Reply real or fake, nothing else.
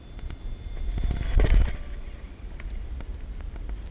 real